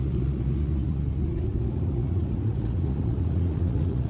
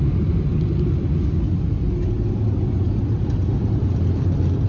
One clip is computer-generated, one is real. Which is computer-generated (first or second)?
first